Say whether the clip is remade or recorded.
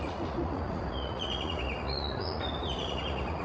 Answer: remade